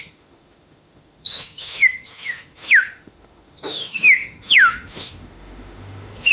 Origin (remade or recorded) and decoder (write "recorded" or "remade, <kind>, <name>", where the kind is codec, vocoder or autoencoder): remade, autoencoder, DAC-VAE